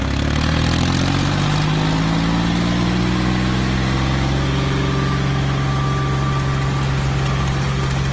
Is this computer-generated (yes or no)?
no